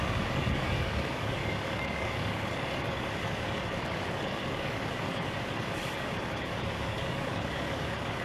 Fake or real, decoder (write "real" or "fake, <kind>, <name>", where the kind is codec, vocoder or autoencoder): fake, codec, DAC